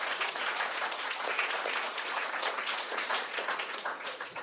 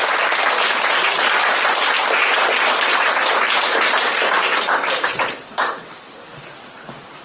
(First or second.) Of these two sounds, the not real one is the first